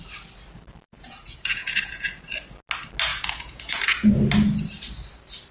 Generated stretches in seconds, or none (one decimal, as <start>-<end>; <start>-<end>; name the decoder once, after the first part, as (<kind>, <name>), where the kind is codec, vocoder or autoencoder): 0.9-2.1 (vocoder, Vocos); 3.1-4.1